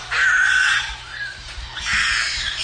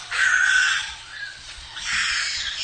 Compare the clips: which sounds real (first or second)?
first